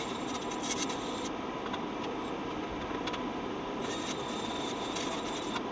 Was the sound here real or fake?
real